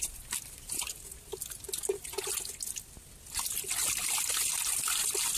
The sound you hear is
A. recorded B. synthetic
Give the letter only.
A